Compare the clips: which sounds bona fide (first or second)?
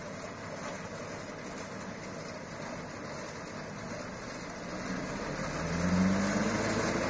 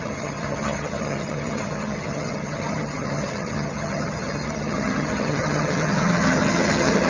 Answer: first